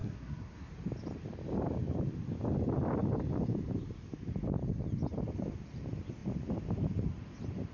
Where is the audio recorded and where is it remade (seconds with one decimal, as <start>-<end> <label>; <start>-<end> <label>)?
0.0-0.7 remade; 0.7-7.7 recorded